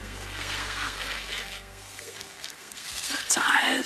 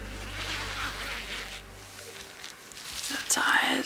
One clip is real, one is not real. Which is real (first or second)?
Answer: second